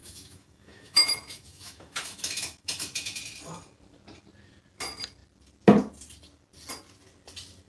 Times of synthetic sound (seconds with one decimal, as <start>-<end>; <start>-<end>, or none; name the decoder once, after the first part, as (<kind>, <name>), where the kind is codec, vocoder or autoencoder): 0.0-3.2 (autoencoder, DAC-VAE)